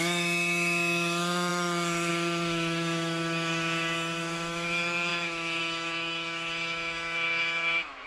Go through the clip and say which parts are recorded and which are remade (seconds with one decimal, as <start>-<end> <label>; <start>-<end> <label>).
0.0-8.1 remade